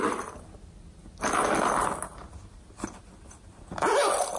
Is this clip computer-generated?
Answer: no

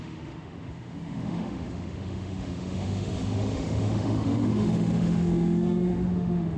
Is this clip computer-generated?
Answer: yes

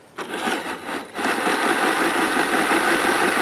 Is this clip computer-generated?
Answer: no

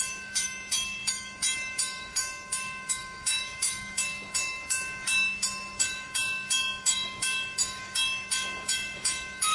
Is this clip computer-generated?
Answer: yes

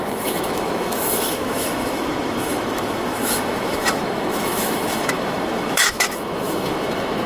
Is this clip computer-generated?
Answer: yes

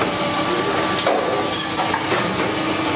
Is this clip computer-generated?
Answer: no